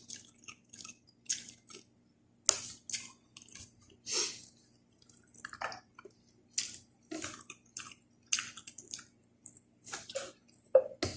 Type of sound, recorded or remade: recorded